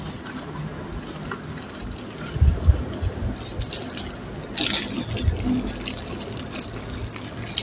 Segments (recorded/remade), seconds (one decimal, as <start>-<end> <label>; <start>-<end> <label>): 0.0-7.6 recorded